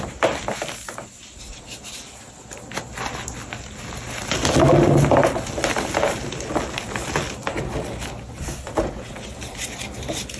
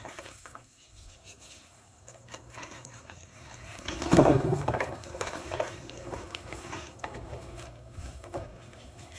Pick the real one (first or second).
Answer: first